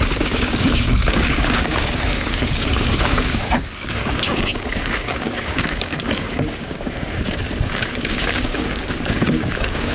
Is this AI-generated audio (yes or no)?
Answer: yes